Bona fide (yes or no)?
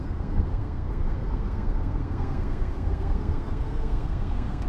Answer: no